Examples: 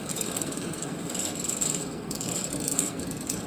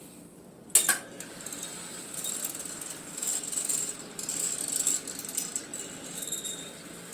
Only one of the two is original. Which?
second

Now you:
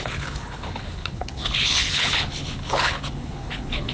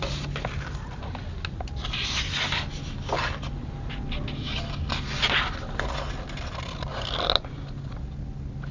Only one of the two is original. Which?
second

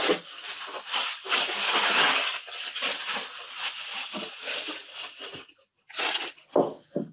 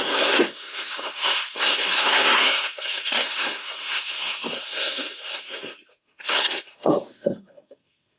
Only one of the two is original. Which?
first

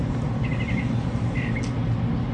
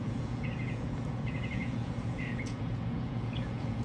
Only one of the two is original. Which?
first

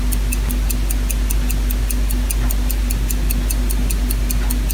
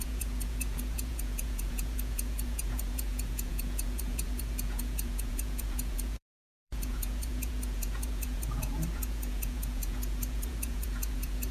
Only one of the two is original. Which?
first